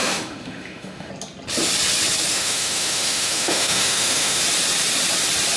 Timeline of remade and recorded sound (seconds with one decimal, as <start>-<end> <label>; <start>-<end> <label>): 0.0-1.1 remade; 1.1-2.3 recorded; 2.3-4.4 remade; 4.4-5.6 recorded